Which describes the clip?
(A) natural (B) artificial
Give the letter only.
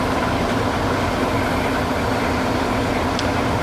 A